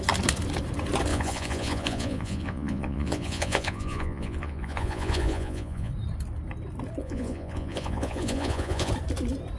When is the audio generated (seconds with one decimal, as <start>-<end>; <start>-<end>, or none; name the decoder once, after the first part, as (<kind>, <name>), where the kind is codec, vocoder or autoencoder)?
1.1-5.9 (vocoder, Vocos); 7.0-8.9